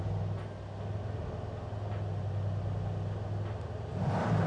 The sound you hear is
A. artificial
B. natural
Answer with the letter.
B